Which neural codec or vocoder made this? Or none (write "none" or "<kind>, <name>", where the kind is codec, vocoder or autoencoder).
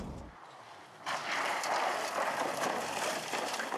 none